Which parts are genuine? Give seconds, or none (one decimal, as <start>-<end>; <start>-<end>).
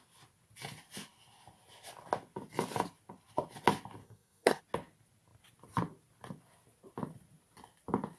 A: 0.0-4.0; 4.6-8.2